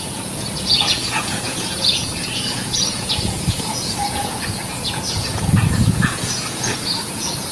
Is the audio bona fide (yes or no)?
no